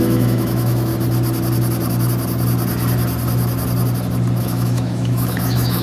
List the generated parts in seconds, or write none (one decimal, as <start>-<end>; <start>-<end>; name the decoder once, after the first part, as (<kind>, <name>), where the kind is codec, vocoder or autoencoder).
0.0-0.9 (autoencoder, DAC-VAE); 4.4-5.8